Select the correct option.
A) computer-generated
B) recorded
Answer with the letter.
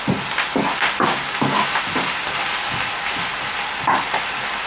B